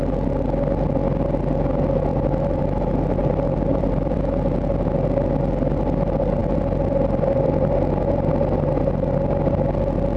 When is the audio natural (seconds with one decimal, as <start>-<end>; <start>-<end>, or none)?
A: 0.0-2.1; 2.6-3.2; 4.3-6.4; 7.5-10.2